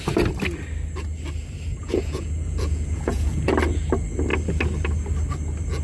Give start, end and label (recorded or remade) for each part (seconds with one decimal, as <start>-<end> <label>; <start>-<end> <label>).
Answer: 0.0-1.7 recorded; 1.7-3.5 remade; 3.5-5.8 recorded